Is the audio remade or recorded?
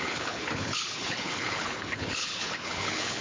remade